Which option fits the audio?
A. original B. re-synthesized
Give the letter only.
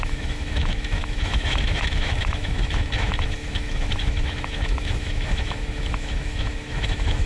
B